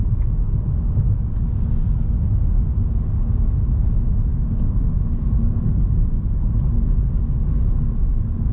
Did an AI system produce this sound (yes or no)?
no